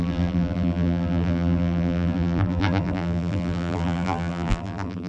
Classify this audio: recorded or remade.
remade